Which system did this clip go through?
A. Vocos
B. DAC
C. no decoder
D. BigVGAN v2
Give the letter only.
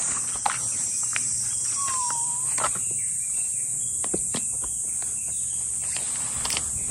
C